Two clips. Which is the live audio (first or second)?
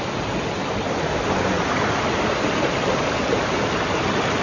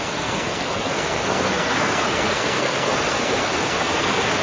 first